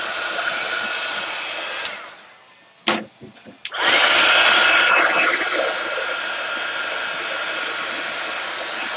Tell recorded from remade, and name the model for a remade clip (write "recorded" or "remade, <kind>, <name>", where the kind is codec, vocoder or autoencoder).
recorded